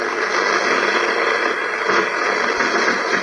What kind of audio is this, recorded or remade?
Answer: recorded